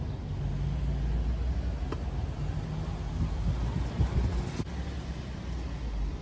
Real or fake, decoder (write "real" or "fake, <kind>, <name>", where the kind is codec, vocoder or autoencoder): real